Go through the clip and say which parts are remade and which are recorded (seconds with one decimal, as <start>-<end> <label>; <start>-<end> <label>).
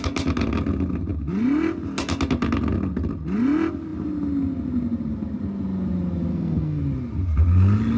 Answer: 0.0-6.3 recorded; 6.3-6.8 remade; 6.8-8.0 recorded